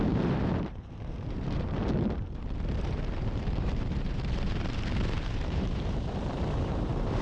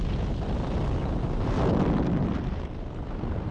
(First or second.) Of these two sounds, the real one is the second